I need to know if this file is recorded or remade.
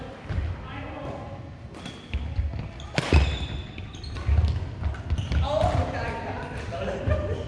recorded